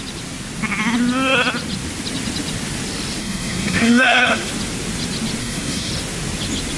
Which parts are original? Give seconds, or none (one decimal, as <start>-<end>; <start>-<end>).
0.0-3.2; 4.5-5.4; 5.9-6.8